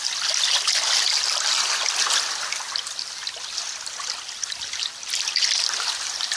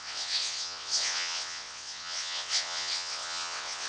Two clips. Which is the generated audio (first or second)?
second